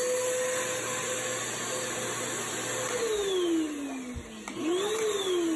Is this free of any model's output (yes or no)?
yes